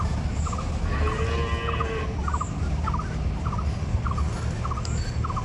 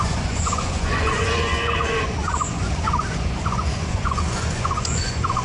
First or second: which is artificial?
second